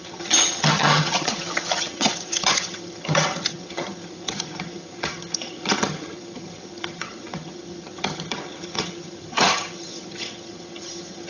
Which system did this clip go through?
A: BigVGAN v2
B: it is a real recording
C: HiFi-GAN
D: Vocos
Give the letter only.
C